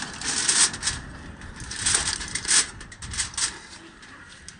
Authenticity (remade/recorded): recorded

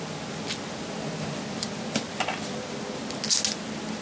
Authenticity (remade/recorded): recorded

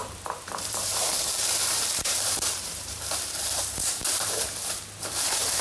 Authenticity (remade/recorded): remade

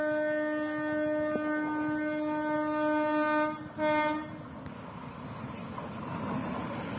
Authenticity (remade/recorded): recorded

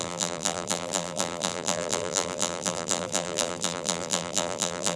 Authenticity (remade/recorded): remade